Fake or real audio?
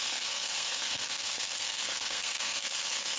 fake